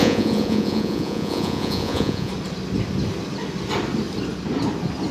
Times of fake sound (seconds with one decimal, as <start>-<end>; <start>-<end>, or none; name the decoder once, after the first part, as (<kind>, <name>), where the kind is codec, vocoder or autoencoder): 0.0-2.3 (vocoder, Vocos)

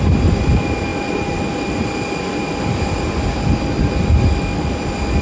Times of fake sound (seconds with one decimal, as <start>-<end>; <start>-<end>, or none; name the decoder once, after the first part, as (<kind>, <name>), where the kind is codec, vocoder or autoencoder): none

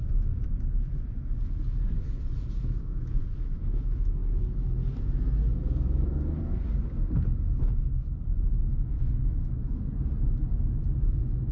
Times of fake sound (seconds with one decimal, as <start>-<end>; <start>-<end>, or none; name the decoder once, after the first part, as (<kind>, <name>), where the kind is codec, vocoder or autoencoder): 2.6-4.2 (autoencoder, DAC-VAE); 8.7-9.9; 11.0-11.5

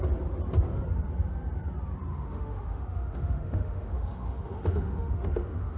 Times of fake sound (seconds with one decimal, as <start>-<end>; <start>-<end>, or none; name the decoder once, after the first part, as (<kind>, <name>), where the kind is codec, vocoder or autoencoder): 2.1-5.8 (autoencoder, DAC-VAE)